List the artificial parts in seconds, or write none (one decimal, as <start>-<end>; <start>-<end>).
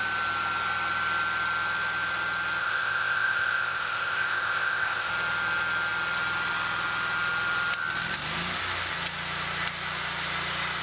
2.6-5.1